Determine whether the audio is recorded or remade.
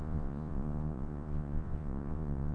remade